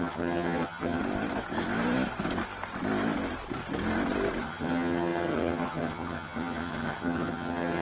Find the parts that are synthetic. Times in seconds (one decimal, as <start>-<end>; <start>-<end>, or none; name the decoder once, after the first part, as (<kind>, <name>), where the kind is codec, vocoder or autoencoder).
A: 0.0-1.0 (vocoder, HiFi-GAN); 4.4-7.8